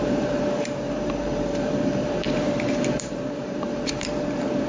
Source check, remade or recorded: remade